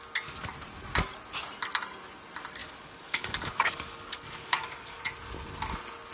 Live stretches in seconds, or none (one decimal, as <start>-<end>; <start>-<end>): 0.0-2.6; 5.0-6.1

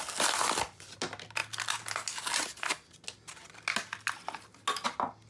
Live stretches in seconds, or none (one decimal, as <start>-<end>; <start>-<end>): 0.0-5.3

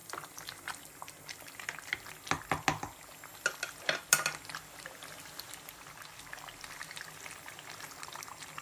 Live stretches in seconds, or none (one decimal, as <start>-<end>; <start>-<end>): 0.8-8.6

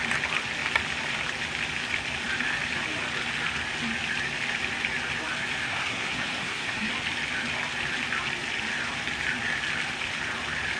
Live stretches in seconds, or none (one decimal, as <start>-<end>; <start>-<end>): 0.0-5.7; 6.9-10.8